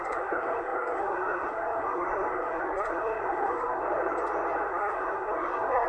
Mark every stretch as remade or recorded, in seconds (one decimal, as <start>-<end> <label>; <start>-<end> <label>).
0.0-3.8 remade; 3.8-4.7 recorded; 4.7-5.9 remade